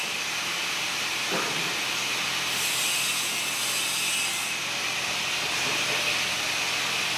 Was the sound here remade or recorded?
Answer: recorded